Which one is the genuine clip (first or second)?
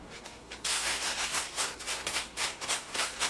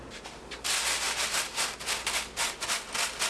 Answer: second